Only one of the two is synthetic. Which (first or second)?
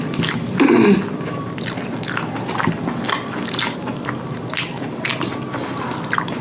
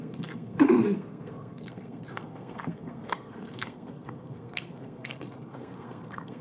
second